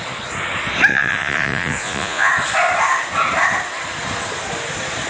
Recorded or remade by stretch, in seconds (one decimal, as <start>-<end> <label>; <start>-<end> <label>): 0.0-0.9 recorded; 0.9-2.3 remade; 2.3-5.1 recorded